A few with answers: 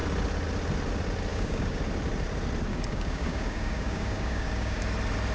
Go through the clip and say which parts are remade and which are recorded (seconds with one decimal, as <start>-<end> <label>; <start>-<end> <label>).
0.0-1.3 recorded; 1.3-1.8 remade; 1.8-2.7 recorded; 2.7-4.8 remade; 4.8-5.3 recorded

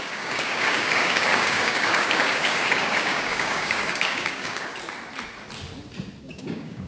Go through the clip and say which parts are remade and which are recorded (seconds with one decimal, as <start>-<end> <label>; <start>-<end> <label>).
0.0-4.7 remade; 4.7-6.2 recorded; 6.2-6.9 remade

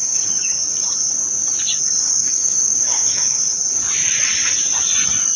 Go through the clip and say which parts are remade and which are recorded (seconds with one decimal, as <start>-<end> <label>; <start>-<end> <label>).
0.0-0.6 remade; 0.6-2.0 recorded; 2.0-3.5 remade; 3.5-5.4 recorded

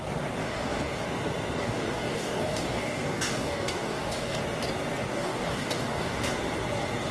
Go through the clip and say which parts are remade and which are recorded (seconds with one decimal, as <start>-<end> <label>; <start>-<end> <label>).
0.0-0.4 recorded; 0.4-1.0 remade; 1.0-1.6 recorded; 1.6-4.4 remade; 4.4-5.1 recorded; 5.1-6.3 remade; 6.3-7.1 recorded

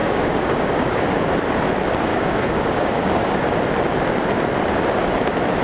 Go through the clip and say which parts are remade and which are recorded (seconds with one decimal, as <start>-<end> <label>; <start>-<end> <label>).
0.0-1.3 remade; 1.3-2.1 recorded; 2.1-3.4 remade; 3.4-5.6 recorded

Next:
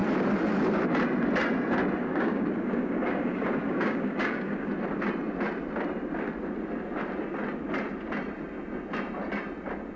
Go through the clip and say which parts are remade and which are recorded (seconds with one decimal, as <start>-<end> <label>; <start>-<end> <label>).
0.0-2.0 recorded; 2.0-4.7 remade; 4.7-10.0 recorded